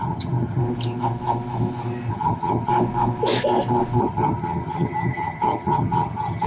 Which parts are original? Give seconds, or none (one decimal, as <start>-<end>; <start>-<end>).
0.6-2.1; 2.7-4.0